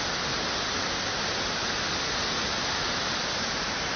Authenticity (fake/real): real